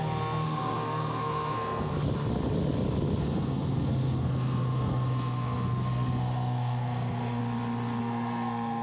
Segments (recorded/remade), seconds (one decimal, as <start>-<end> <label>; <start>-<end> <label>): 0.0-1.9 remade; 1.9-3.2 recorded; 3.2-7.4 remade; 7.4-8.0 recorded; 8.0-8.8 remade

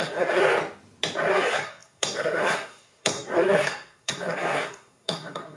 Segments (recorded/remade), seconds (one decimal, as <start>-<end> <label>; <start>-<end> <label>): 0.0-0.4 remade; 0.4-1.3 recorded; 1.3-5.6 remade